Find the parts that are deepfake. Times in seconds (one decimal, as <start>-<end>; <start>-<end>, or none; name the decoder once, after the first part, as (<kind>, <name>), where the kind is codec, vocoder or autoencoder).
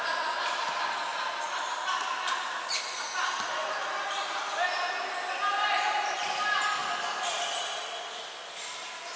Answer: 3.6-4.9 (vocoder, BigVGAN v2); 5.4-6.2